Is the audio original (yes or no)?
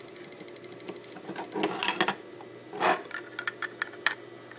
yes